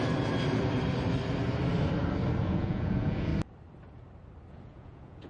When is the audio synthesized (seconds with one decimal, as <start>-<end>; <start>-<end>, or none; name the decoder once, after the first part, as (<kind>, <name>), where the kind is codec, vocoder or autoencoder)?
2.4-3.3 (vocoder, Vocos); 4.5-5.3

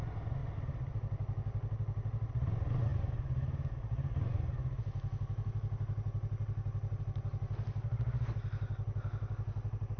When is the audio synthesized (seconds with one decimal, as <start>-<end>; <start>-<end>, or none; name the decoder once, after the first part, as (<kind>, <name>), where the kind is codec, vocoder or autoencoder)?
none

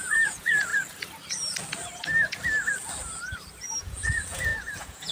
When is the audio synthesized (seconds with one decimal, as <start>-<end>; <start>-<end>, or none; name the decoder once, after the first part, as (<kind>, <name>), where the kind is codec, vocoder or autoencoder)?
0.0-0.7 (vocoder, Vocos); 3.8-5.1

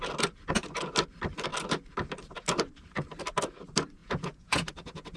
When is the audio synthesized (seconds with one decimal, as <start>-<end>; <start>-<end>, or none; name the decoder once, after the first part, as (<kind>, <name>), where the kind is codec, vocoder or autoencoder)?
4.0-5.2 (vocoder, Vocos)

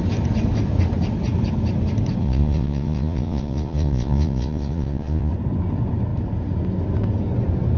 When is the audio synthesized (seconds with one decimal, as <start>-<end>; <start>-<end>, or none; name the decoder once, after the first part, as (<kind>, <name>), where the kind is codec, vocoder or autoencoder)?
2.2-5.3 (vocoder, Vocos)

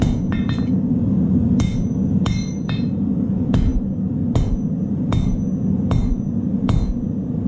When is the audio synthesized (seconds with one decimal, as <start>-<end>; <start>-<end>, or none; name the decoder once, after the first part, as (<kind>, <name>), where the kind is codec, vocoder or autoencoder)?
0.0-3.7 (vocoder, Vocos); 4.4-7.5